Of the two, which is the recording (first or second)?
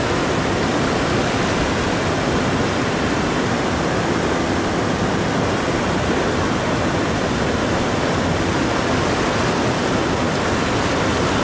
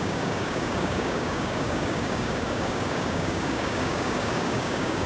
first